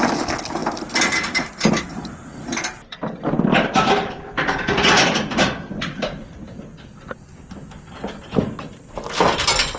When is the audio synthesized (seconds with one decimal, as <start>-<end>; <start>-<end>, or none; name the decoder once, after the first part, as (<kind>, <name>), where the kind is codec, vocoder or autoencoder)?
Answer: none

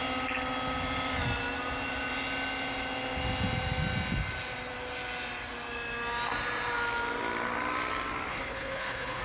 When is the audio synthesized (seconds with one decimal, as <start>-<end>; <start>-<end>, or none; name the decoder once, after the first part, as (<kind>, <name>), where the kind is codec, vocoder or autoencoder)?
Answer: 8.3-9.2 (codec, HILCodec)

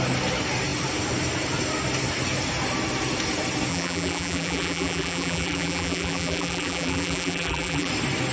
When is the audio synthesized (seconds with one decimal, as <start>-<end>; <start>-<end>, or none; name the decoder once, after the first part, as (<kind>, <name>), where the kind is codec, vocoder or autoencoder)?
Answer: 3.7-7.9 (vocoder, BigVGAN v2)

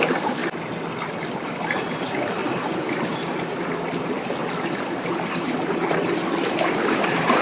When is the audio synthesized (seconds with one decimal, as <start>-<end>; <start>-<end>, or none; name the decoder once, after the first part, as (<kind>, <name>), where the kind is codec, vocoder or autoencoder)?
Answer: 0.0-0.4 (vocoder, BigVGAN v2); 1.2-2.4; 4.0-4.4; 5.4-7.4

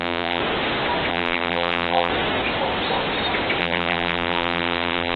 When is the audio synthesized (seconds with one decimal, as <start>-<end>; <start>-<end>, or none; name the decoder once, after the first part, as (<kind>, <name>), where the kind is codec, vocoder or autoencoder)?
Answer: 0.0-0.4 (vocoder, BigVGAN v2); 1.1-2.1; 3.6-5.2

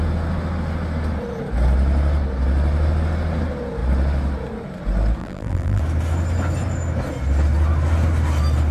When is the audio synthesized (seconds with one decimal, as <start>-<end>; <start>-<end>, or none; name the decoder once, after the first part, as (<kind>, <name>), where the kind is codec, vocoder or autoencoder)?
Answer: 5.2-5.8 (vocoder, BigVGAN v2)

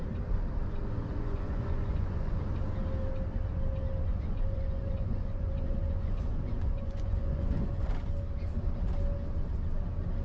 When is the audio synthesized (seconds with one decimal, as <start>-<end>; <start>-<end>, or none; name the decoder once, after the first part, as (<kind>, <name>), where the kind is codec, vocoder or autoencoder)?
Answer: 0.8-2.4 (vocoder, Vocos); 4.1-7.9